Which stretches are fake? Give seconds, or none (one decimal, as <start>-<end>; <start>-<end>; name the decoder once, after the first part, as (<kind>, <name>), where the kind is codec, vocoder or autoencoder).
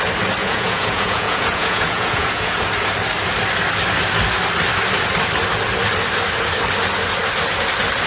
0.4-2.6 (vocoder, Vocos)